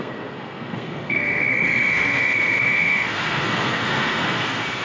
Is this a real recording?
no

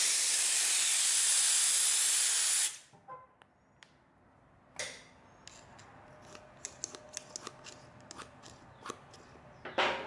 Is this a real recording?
yes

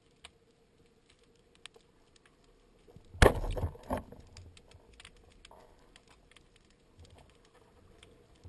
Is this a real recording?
yes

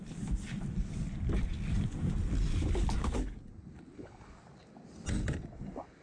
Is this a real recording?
yes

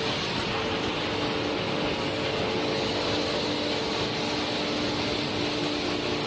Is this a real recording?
yes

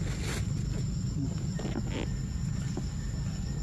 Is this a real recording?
yes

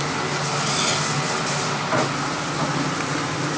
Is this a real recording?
yes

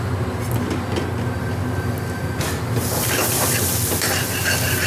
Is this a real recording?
yes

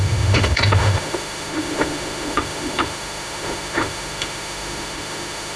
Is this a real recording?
no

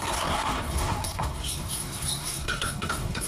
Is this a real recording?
no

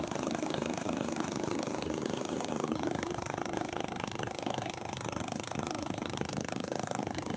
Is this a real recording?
no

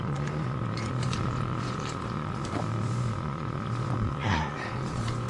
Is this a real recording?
no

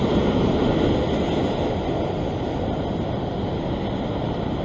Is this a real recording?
yes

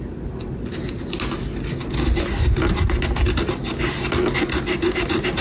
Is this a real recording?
yes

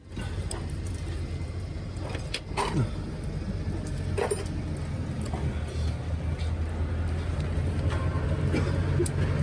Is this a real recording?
yes